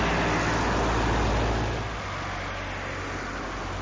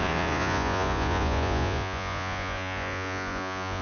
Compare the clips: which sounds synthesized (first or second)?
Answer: second